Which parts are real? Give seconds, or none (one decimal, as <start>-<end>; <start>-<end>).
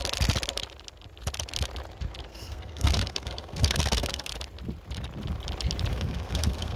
0.0-2.3; 4.3-5.9